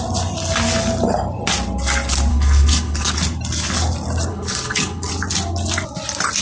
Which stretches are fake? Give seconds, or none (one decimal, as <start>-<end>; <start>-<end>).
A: 2.3-3.1; 4.3-5.1